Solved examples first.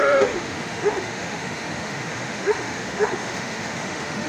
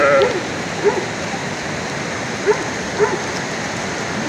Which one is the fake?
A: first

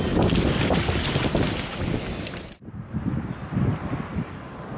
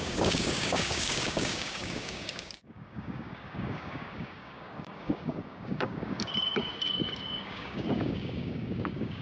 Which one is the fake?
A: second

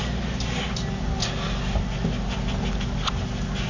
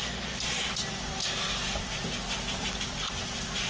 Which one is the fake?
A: second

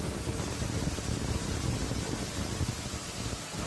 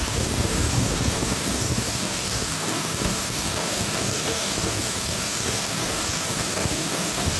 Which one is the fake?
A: second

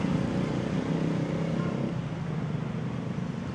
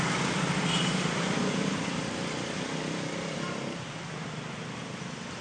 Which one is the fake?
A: second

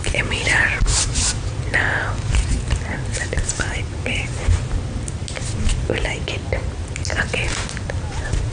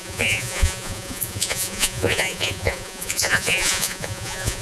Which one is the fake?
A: second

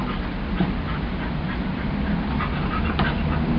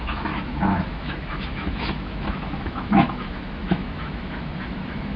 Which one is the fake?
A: second